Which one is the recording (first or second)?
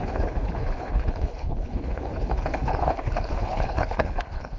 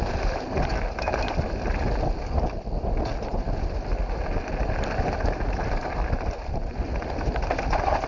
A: second